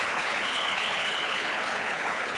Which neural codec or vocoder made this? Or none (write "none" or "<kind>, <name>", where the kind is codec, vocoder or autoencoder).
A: codec, HILCodec